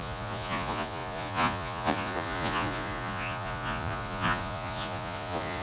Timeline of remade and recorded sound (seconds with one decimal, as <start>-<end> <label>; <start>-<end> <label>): 0.0-5.6 remade